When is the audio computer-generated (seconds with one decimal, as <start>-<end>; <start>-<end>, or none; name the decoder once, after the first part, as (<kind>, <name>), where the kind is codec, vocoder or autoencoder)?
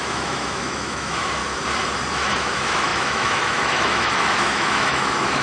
0.0-1.4 (autoencoder, DAC-VAE); 2.1-5.4